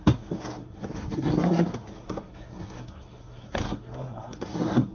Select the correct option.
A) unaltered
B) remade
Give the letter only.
B